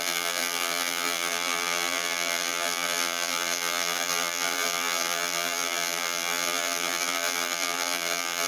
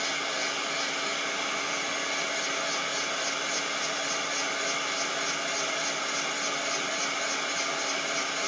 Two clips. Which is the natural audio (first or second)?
second